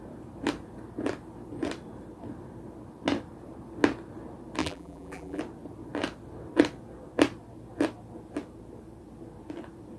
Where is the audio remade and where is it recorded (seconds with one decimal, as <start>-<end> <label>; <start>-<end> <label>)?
0.0-4.6 recorded; 4.6-5.4 remade; 5.4-10.0 recorded